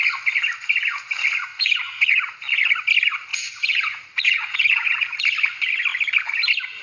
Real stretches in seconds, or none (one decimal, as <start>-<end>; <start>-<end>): 0.0-1.5; 2.2-3.3; 5.2-6.8